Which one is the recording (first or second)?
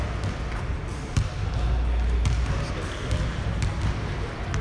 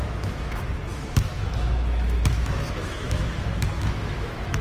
first